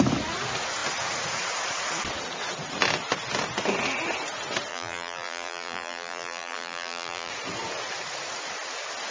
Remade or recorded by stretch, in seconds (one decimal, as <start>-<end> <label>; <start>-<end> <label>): 0.0-4.7 recorded; 4.7-7.3 remade; 7.3-9.1 recorded